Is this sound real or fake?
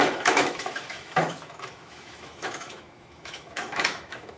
fake